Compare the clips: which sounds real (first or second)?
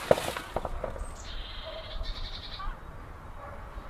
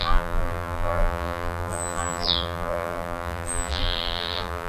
first